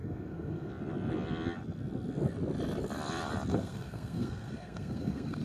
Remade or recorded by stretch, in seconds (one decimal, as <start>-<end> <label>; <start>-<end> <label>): 0.0-0.7 remade; 0.7-3.5 recorded; 3.5-5.4 remade